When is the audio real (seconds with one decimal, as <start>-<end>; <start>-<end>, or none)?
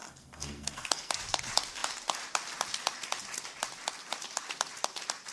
1.1-5.3